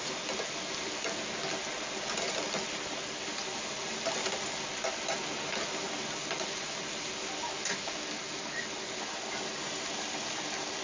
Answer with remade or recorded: recorded